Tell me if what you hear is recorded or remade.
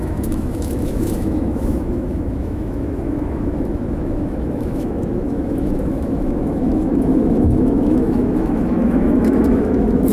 remade